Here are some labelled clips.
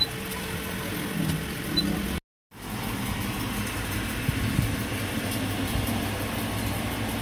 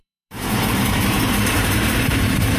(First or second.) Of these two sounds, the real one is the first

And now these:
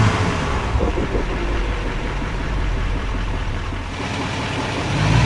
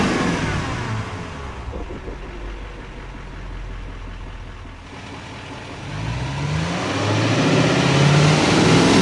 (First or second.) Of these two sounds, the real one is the second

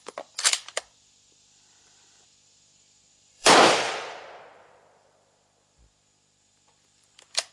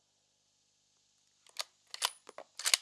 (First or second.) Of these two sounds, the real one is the second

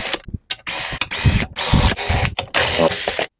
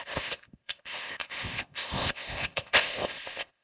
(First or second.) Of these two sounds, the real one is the first